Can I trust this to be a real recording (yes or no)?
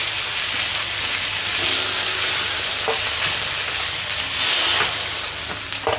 yes